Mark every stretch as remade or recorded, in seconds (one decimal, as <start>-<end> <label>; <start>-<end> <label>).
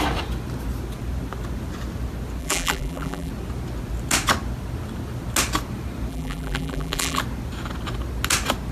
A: 0.0-2.4 recorded; 2.4-3.3 remade; 3.3-6.1 recorded; 6.1-7.2 remade; 7.2-8.7 recorded